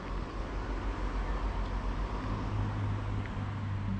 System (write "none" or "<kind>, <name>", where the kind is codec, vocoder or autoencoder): none